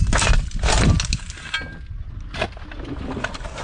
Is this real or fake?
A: real